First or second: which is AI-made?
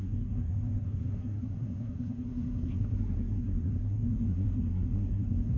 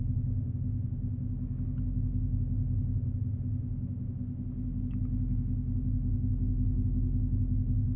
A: first